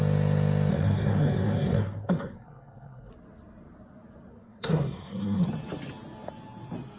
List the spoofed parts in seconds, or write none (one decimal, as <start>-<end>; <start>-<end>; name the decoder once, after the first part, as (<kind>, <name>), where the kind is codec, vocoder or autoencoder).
0.7-3.1 (codec, SNAC); 4.3-5.4